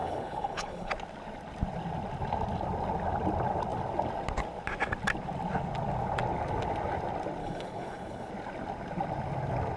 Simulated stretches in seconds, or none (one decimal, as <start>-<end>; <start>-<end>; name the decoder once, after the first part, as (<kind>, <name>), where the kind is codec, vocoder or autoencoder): 0.0-0.9 (codec, HILCodec); 7.4-8.3